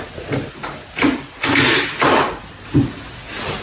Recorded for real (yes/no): yes